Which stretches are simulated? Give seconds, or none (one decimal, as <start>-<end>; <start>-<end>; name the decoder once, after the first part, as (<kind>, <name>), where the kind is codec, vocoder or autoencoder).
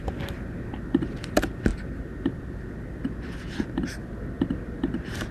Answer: none